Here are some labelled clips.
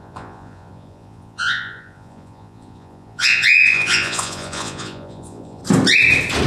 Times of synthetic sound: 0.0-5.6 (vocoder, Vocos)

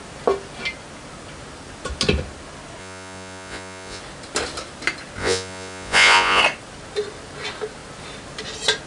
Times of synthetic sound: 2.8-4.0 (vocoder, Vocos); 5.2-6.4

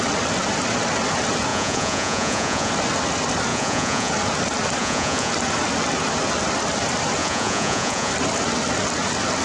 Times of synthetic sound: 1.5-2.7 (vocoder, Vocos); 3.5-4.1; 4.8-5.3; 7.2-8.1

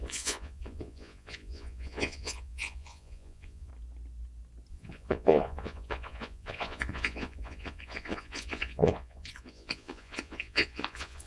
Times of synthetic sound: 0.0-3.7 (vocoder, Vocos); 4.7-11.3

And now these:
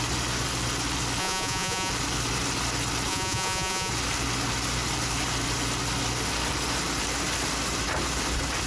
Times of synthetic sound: 1.2-1.9 (vocoder, Vocos); 3.1-3.9